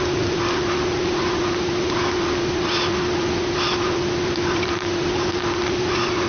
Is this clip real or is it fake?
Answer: real